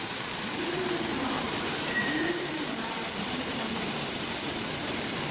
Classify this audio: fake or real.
fake